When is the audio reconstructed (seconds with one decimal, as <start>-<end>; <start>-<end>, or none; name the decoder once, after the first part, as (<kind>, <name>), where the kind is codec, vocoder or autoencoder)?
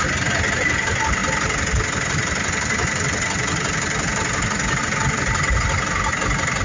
none